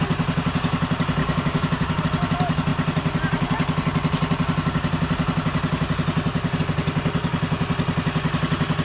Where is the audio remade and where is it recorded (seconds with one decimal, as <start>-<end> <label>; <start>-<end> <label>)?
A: 0.0-1.2 recorded; 1.2-2.0 remade; 2.0-8.8 recorded